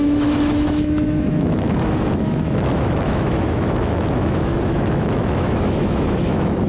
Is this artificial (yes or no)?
yes